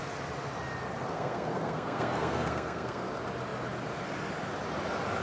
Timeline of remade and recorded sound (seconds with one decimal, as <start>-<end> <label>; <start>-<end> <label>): 0.0-1.1 recorded; 1.1-3.1 remade; 3.1-5.2 recorded